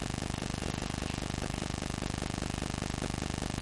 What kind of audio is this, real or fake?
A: real